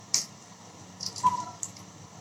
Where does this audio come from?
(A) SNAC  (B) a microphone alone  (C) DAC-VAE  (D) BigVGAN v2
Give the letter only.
D